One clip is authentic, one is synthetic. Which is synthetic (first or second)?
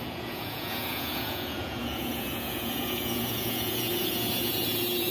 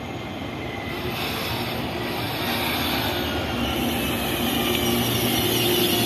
first